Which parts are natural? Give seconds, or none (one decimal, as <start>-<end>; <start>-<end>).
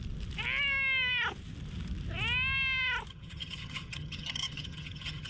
0.0-3.1